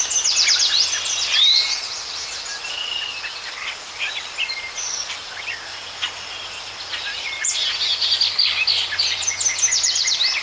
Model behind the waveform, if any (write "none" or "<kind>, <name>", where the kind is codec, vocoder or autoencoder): none